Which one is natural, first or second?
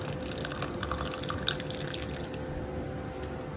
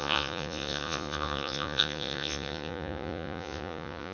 first